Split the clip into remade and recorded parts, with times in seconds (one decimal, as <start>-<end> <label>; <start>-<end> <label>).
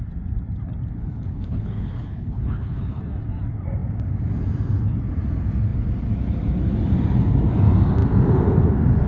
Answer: 0.0-1.0 recorded; 1.0-3.0 remade; 3.0-9.1 recorded